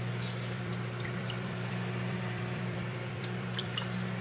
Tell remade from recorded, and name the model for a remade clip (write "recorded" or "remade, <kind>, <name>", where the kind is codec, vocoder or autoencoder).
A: remade, vocoder, BigVGAN v2